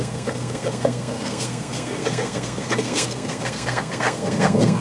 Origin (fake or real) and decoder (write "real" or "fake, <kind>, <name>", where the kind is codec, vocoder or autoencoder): fake, codec, SNAC